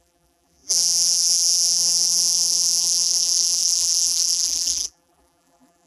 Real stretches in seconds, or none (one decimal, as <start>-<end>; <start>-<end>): none

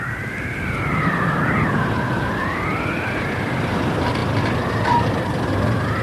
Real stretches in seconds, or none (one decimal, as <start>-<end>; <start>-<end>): 0.0-6.0

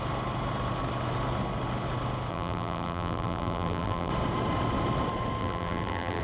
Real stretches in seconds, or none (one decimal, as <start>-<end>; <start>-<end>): 0.0-2.3; 4.1-5.4

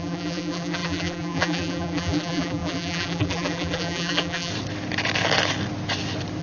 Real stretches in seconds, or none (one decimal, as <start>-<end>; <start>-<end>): 4.5-6.4